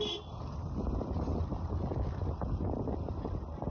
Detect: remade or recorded recorded